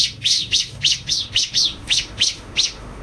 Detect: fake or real fake